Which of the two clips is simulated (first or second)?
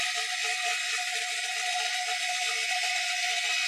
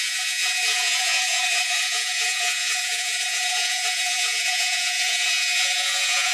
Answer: second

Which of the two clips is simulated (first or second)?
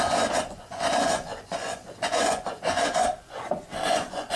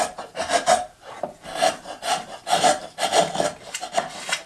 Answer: first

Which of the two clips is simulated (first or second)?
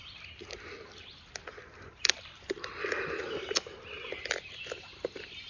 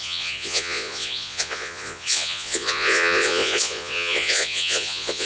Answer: second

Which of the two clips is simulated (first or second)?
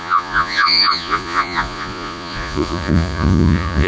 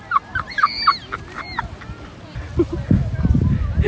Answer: first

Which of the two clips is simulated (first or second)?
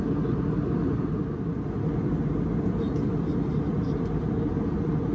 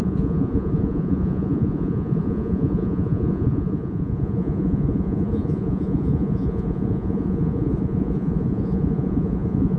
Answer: second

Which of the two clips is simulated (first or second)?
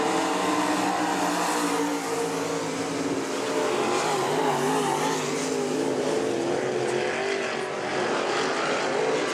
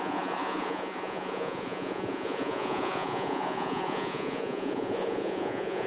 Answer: second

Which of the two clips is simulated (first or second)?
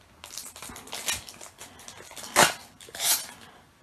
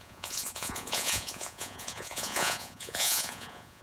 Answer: second